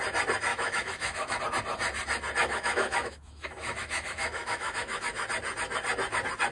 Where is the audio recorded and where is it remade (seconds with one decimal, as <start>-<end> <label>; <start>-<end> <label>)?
0.0-0.5 recorded; 0.5-1.4 remade; 1.4-2.4 recorded; 2.4-5.2 remade; 5.2-6.5 recorded

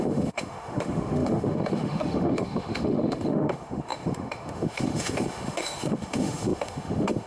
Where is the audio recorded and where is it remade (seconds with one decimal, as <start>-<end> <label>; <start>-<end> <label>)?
0.0-7.3 remade